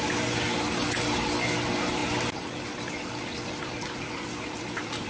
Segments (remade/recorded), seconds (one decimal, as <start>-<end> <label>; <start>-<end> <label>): 0.0-5.1 recorded